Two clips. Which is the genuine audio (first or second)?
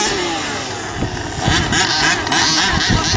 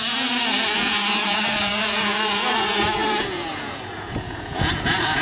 first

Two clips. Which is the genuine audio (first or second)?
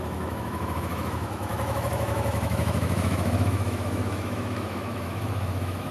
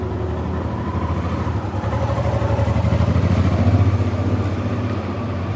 second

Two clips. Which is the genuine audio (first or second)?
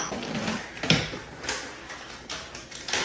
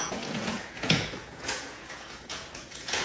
first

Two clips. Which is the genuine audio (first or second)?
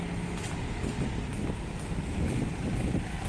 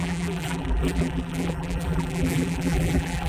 first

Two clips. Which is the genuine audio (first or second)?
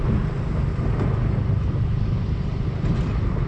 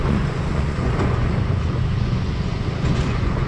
first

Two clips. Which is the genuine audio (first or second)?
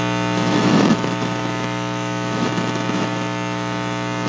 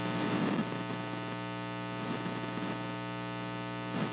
second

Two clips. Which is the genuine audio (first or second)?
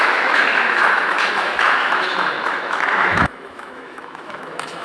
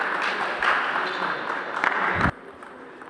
second